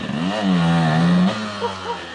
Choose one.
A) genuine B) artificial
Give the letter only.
A